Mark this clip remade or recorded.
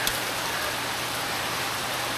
remade